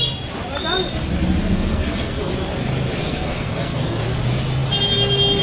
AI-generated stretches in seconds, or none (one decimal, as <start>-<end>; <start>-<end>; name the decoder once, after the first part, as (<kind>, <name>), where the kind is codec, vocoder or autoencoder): 1.4-2.3 (codec, SNAC); 3.0-4.0